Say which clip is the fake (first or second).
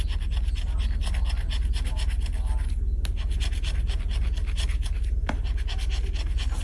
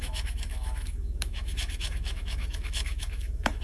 second